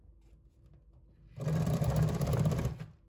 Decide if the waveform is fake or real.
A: real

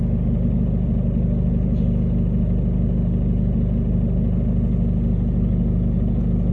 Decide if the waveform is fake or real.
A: real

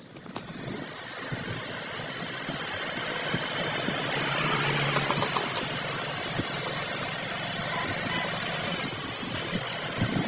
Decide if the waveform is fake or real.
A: real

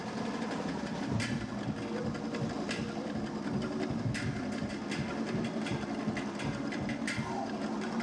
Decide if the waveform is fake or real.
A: real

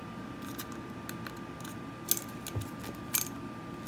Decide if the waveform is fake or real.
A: real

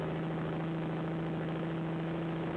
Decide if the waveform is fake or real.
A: fake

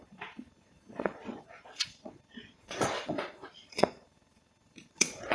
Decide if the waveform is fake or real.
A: fake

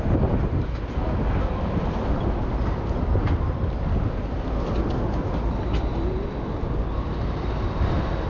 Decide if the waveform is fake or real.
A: real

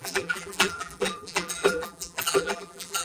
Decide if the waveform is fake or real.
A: fake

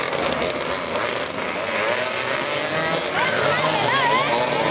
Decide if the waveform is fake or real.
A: real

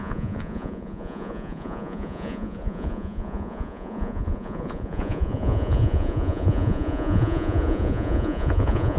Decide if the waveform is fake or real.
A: fake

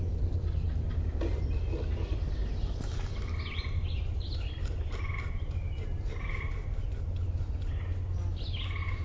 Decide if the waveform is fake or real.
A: real